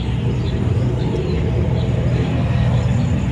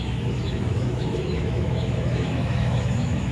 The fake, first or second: second